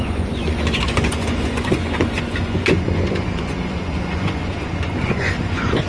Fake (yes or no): yes